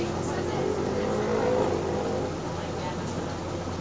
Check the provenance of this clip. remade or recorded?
recorded